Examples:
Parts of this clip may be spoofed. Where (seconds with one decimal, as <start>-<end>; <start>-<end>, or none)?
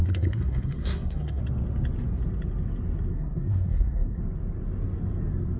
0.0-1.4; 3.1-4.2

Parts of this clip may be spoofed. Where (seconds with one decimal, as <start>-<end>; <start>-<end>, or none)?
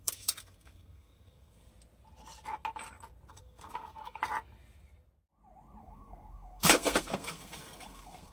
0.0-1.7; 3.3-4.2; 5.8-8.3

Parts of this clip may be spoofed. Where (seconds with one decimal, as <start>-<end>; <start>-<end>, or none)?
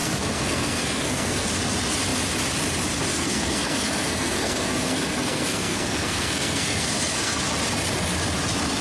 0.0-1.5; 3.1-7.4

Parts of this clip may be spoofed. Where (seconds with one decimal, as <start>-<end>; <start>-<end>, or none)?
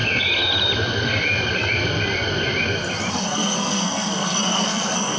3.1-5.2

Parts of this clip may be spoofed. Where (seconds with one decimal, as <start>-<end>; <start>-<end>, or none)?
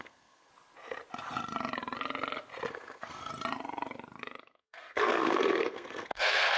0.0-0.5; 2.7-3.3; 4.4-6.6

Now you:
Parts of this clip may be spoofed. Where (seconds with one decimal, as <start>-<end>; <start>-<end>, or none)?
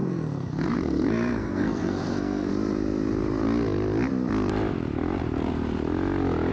0.0-2.5